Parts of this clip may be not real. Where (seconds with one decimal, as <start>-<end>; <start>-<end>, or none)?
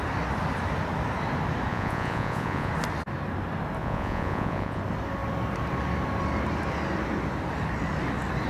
1.7-2.7; 3.8-4.8